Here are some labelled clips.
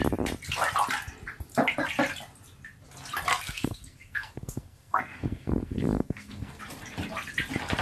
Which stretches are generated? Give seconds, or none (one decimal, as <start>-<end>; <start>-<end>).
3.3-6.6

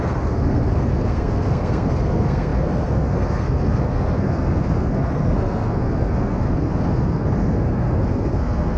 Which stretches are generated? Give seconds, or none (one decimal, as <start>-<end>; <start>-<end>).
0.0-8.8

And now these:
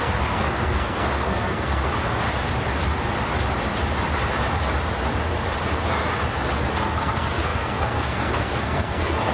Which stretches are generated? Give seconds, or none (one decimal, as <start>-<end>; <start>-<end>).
0.0-1.9; 7.0-9.3